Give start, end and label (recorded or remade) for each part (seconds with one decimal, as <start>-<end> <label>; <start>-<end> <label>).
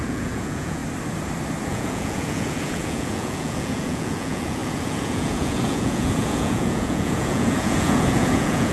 0.0-0.8 remade; 0.8-1.6 recorded; 1.6-8.7 remade